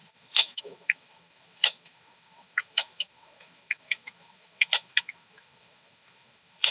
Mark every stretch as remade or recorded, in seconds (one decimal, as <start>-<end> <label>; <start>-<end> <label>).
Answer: 0.0-6.7 remade